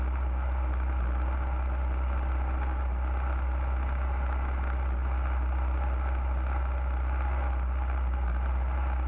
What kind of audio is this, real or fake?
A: real